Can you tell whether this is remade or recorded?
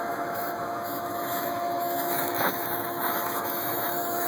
remade